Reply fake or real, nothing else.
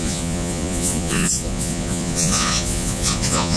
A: fake